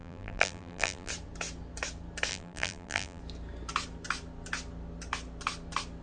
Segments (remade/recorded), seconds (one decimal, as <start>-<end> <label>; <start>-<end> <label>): 0.0-1.1 remade; 1.1-2.3 recorded; 2.3-3.2 remade; 3.2-6.0 recorded

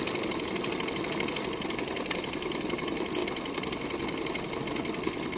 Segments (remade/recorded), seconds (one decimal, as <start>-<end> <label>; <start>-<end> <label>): 0.0-5.4 recorded